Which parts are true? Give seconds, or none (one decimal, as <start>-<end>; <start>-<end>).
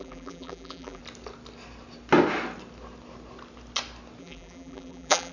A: 1.0-4.2